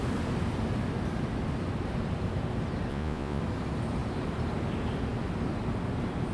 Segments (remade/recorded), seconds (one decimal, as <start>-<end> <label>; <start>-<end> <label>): 0.0-2.9 recorded; 2.9-3.4 remade; 3.4-6.3 recorded